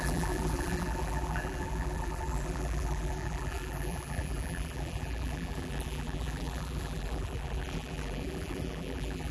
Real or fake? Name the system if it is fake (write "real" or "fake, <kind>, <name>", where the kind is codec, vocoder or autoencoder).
fake, vocoder, BigVGAN v2